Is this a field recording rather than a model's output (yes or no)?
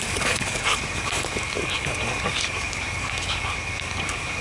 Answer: no